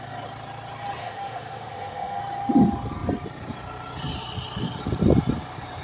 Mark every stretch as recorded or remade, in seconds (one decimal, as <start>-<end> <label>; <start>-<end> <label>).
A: 0.0-1.0 recorded; 1.0-2.2 remade; 2.2-5.8 recorded